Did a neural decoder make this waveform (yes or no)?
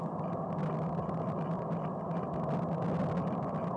no